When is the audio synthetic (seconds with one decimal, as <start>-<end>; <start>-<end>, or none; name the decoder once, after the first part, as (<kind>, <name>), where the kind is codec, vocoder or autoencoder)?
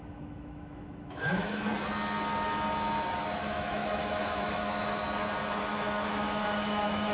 0.0-1.7 (autoencoder, DAC-VAE); 3.4-5.0; 5.6-7.1